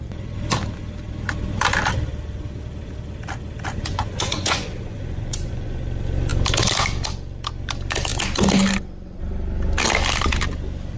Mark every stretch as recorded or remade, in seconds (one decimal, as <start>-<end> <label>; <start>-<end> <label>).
0.0-3.9 recorded; 3.9-5.8 remade; 5.8-11.0 recorded